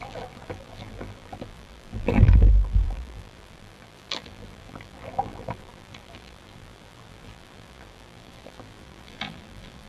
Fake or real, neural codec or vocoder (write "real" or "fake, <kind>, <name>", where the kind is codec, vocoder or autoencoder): fake, vocoder, BigVGAN v2